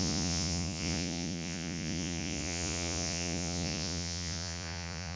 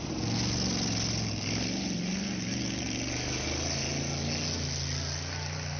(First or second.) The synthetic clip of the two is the first